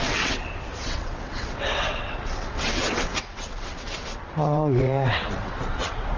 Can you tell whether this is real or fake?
fake